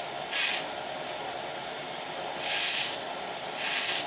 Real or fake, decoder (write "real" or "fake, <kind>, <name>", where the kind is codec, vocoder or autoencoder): real